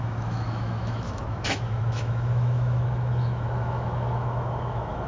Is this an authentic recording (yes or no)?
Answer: no